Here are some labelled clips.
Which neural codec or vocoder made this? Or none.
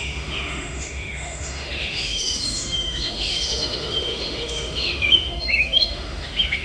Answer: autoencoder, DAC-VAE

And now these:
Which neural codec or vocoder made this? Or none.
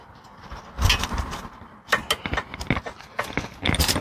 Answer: none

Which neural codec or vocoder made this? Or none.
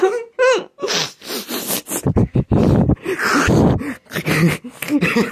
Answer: none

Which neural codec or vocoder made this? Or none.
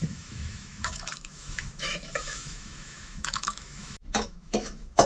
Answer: autoencoder, DAC-VAE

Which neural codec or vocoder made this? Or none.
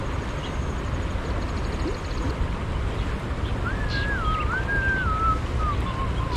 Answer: none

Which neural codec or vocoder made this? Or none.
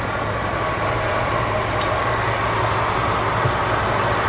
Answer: none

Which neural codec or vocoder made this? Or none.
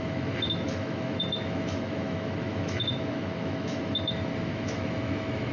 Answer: autoencoder, DAC-VAE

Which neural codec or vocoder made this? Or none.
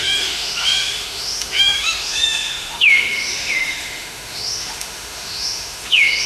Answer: autoencoder, DAC-VAE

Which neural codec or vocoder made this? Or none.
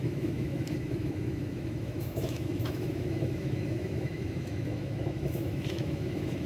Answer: autoencoder, DAC-VAE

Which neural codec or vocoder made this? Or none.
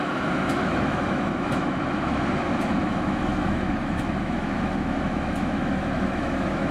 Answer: autoencoder, DAC-VAE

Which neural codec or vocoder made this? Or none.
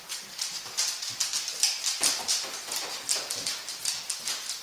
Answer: none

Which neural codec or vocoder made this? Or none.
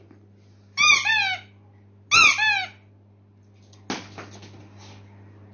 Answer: none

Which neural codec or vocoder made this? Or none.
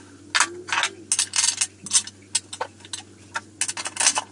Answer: none